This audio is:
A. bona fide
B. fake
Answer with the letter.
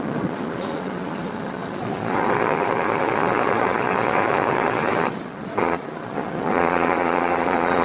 B